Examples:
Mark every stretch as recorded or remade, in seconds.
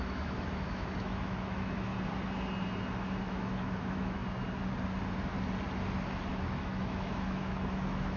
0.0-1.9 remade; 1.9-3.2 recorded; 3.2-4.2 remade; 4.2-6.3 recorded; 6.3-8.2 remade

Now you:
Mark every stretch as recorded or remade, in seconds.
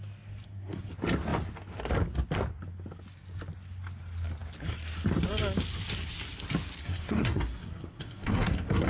0.0-0.4 recorded; 0.4-0.9 remade; 0.9-6.8 recorded; 6.8-8.9 remade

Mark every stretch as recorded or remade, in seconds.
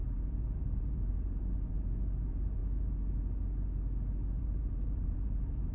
0.0-2.6 remade; 2.6-4.4 recorded; 4.4-5.7 remade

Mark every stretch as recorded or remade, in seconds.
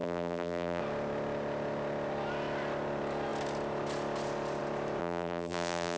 0.0-0.8 remade; 0.8-5.0 recorded; 5.0-6.0 remade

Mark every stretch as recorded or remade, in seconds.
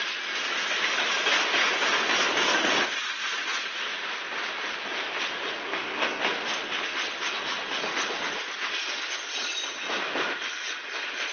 0.0-5.6 recorded; 5.6-6.2 remade; 6.2-11.3 recorded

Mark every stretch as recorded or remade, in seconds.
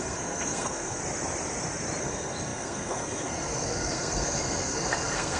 0.0-1.0 remade; 1.0-2.0 recorded; 2.0-5.4 remade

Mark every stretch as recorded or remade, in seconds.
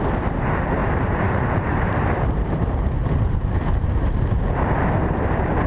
0.0-0.8 recorded; 0.8-4.2 remade; 4.2-5.7 recorded